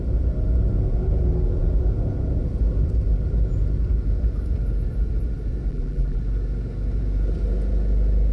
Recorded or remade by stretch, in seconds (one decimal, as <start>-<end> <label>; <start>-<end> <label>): 0.0-5.7 recorded; 5.7-6.2 remade; 6.2-8.3 recorded